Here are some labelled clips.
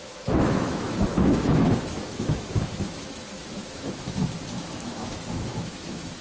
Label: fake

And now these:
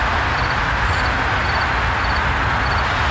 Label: real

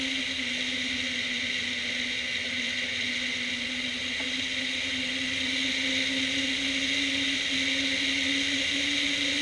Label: real